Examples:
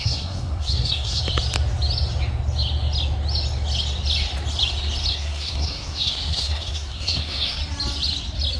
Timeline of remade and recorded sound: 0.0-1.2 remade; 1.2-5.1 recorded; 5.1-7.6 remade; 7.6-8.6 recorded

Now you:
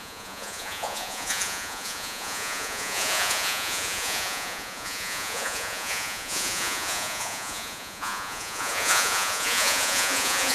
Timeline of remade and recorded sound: 0.0-10.5 remade

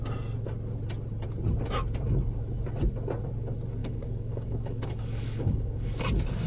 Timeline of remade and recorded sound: 0.0-3.8 recorded; 3.8-6.0 remade; 6.0-6.5 recorded

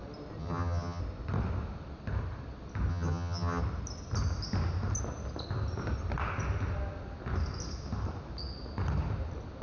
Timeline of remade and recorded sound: 0.0-0.4 recorded; 0.4-1.0 remade; 1.0-2.9 recorded; 2.9-3.6 remade; 3.6-9.6 recorded

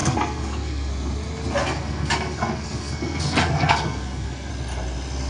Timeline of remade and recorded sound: 0.0-0.9 remade; 0.9-1.6 recorded; 1.6-4.5 remade; 4.5-5.3 recorded

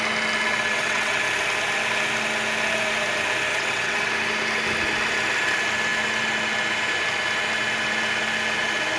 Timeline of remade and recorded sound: 0.0-0.5 recorded; 0.5-1.2 remade; 1.2-3.5 recorded; 3.5-4.1 remade; 4.1-9.0 recorded

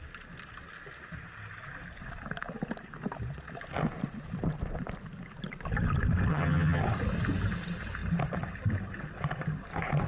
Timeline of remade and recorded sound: 0.0-6.3 recorded; 6.3-6.8 remade; 6.8-10.1 recorded